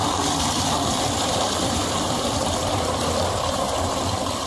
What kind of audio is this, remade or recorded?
remade